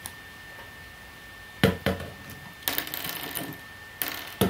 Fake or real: real